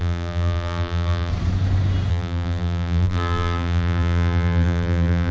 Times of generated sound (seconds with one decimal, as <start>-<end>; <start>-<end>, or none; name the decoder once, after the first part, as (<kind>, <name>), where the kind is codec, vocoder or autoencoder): 0.0-1.3 (vocoder, BigVGAN v2); 2.1-5.3